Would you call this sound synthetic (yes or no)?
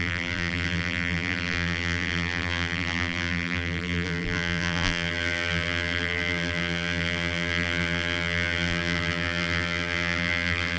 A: yes